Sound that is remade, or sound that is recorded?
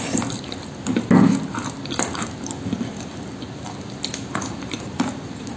recorded